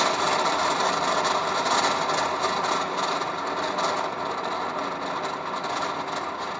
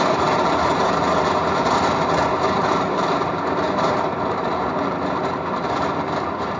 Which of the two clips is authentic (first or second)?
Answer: first